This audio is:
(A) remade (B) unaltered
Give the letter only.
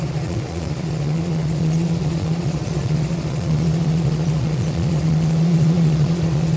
A